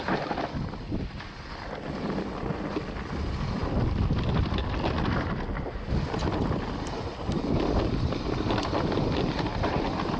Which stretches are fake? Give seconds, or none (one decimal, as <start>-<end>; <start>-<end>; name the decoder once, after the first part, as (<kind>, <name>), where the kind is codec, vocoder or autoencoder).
none